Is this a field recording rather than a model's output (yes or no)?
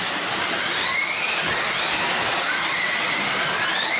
yes